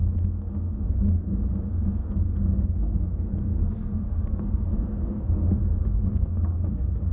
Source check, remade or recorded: remade